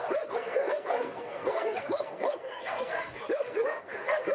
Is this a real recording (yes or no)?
no